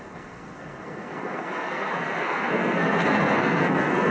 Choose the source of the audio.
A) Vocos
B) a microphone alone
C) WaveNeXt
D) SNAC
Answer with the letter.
D